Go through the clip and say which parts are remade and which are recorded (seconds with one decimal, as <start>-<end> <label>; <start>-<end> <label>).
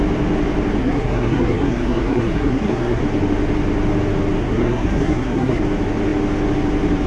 0.0-0.8 recorded; 0.8-3.0 remade; 3.0-4.4 recorded; 4.4-5.6 remade; 5.6-7.1 recorded